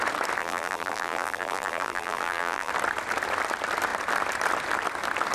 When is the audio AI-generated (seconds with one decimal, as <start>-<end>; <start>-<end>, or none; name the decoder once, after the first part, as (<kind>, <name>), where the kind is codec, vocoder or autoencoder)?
0.4-2.7 (vocoder, BigVGAN v2)